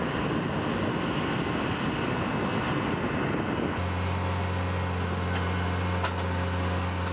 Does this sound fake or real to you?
real